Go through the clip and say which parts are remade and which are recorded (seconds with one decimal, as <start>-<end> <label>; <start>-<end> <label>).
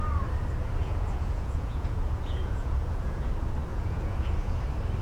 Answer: 0.0-0.8 recorded; 0.8-3.3 remade; 3.3-3.7 recorded; 3.7-4.6 remade; 4.6-5.0 recorded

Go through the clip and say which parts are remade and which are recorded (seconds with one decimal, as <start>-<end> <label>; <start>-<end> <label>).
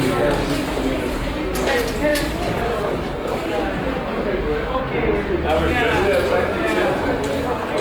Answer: 0.0-2.1 recorded; 2.1-3.6 remade; 3.6-4.1 recorded; 4.1-4.8 remade; 4.8-7.8 recorded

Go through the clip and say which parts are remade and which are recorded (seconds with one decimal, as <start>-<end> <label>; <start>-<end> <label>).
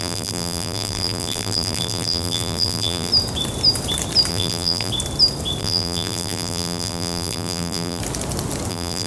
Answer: 0.0-3.1 remade; 3.1-4.3 recorded; 4.3-4.9 remade; 4.9-5.6 recorded; 5.6-8.0 remade; 8.0-8.7 recorded; 8.7-9.1 remade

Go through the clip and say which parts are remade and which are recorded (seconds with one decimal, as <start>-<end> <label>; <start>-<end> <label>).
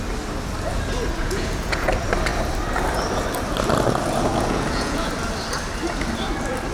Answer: 0.0-1.2 recorded; 1.2-1.9 remade; 1.9-4.3 recorded; 4.3-5.1 remade; 5.1-6.7 recorded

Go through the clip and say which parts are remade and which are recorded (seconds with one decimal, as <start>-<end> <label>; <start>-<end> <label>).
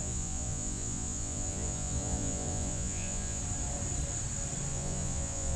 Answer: 0.0-3.4 remade; 3.4-4.7 recorded; 4.7-5.6 remade